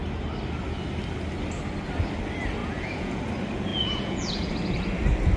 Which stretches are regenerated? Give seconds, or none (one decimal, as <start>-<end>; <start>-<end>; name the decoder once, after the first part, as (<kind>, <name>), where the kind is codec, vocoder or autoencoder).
2.6-3.2 (vocoder, Vocos); 3.7-4.5